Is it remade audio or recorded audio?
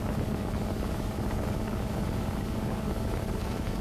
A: remade